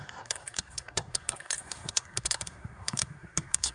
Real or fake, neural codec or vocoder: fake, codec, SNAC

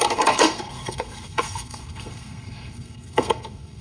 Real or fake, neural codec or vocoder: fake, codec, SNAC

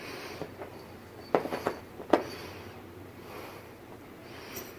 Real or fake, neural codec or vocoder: real